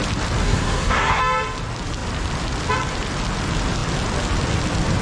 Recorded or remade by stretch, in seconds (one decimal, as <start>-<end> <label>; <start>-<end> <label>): 0.0-0.4 recorded; 0.4-1.2 remade; 1.2-5.0 recorded